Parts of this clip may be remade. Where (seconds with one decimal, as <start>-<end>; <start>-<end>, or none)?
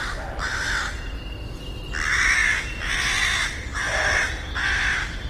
none